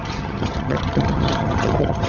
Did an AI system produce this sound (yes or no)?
yes